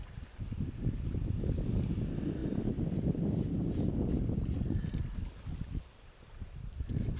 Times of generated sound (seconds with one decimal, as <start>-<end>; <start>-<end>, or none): 2.4-5.8